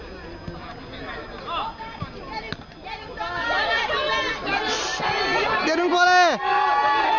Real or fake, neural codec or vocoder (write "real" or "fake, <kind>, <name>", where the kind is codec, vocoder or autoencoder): real